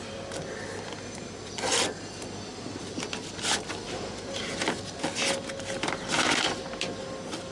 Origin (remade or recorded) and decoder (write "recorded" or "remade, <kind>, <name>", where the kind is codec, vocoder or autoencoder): recorded